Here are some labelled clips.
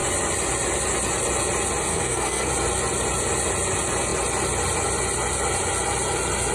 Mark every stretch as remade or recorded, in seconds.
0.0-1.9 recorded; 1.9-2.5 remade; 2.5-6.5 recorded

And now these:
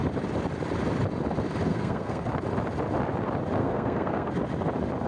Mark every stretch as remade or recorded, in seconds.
0.0-1.7 recorded; 1.7-2.3 remade; 2.3-3.6 recorded; 3.6-4.3 remade; 4.3-5.1 recorded

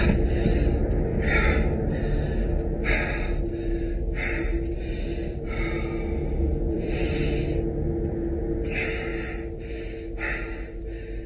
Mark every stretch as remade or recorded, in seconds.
0.0-6.5 recorded; 6.5-7.2 remade; 7.2-11.3 recorded

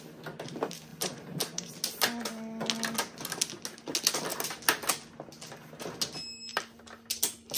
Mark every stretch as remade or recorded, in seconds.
0.0-0.9 recorded; 0.9-1.7 remade; 1.7-7.6 recorded

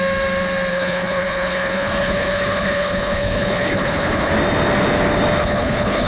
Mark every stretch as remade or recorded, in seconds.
0.0-0.7 recorded; 0.7-4.3 remade; 4.3-5.4 recorded; 5.4-6.1 remade

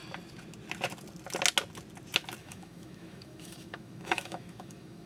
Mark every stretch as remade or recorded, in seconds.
0.0-2.4 recorded; 2.4-5.1 remade

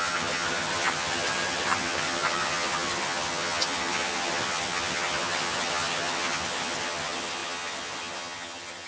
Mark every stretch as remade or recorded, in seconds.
0.0-8.9 remade

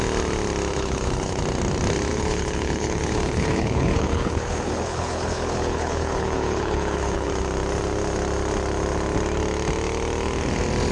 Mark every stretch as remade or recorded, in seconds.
0.0-0.7 recorded; 0.7-1.4 remade; 1.4-2.1 recorded; 2.1-7.3 remade; 7.3-10.9 recorded